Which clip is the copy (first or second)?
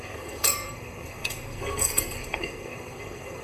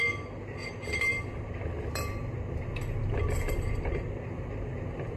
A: first